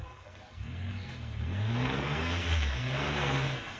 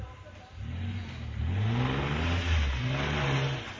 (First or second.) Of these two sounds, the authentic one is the second